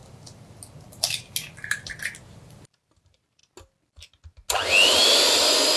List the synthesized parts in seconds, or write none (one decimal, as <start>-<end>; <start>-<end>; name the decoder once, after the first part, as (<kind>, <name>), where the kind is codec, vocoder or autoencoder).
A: 1.9-3.4 (vocoder, BigVGAN v2)